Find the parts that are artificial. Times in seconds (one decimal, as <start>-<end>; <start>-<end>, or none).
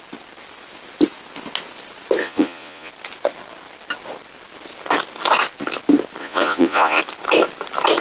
2.2-2.9; 6.2-7.0